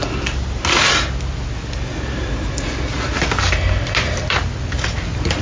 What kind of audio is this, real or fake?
real